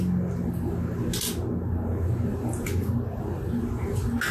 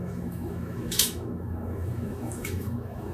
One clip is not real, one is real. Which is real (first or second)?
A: first